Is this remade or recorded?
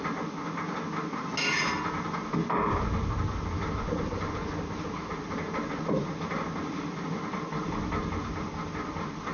recorded